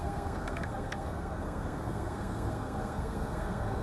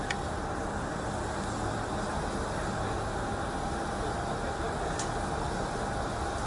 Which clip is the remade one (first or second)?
first